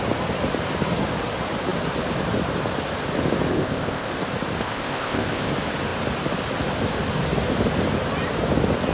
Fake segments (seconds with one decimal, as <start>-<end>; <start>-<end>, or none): 3.5-4.1; 4.6-5.5